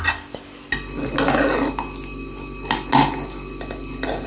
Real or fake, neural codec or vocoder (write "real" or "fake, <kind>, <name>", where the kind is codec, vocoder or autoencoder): real